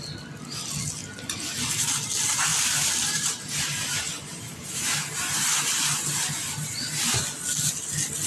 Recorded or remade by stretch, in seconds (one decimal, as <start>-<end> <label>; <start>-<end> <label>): 0.0-2.5 recorded; 2.5-5.9 remade; 5.9-6.4 recorded; 6.4-7.2 remade; 7.2-8.3 recorded